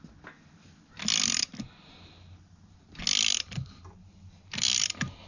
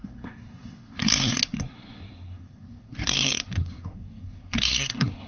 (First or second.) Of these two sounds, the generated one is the second